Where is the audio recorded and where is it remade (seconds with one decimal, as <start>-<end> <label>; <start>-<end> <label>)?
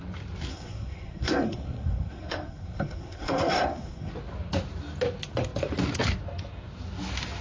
0.0-0.5 recorded; 0.5-4.1 remade; 4.1-7.4 recorded